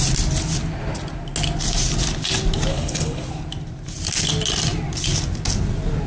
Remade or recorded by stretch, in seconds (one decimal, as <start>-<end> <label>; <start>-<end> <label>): 0.0-2.7 recorded; 2.7-3.3 remade; 3.3-6.1 recorded